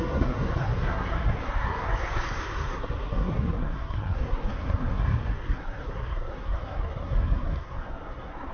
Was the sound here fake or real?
fake